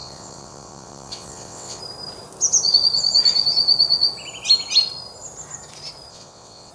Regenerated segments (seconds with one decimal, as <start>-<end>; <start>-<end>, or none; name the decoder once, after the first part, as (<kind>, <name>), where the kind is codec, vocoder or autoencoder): 0.0-1.8 (vocoder, WaveNeXt); 6.1-6.7